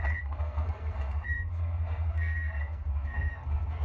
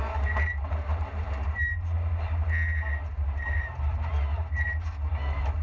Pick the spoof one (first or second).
first